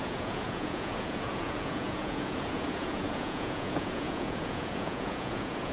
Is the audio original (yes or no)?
no